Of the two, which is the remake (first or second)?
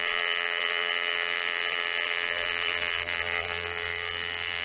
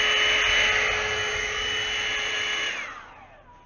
first